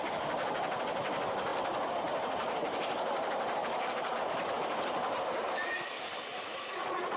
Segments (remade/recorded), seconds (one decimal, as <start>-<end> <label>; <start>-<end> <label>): 0.0-6.3 recorded; 6.3-7.2 remade